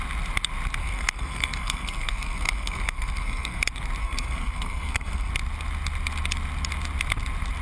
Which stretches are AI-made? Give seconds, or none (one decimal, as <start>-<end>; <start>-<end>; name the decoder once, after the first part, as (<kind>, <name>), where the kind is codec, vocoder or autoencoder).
0.8-3.6 (codec, SNAC); 4.0-5.3